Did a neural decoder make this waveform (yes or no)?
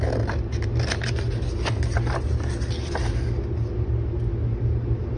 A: no